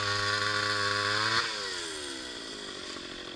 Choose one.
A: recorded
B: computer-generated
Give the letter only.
A